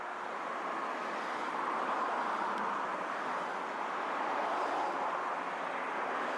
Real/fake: real